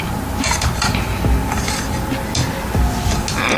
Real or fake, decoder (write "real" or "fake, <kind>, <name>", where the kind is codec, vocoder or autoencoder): real